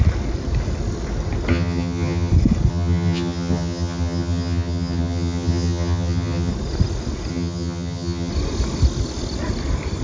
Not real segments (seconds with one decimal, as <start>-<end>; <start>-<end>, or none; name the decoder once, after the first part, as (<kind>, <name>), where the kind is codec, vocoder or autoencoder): 1.5-2.3 (vocoder, HiFi-GAN); 2.7-6.5; 7.3-8.3